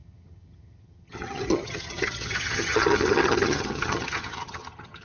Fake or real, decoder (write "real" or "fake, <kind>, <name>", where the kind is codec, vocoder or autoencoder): fake, vocoder, HiFi-GAN